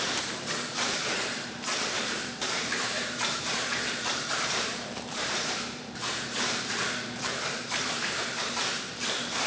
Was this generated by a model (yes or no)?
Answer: yes